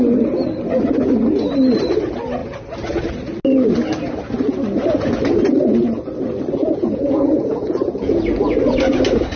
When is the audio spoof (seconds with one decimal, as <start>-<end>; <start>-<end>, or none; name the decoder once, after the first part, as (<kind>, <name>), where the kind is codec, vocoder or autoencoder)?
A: 6.6-8.2 (vocoder, Vocos)